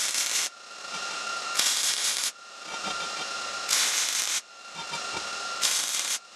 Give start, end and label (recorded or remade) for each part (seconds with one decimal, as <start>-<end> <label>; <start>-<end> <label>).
0.0-6.4 recorded